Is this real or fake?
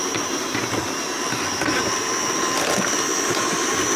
real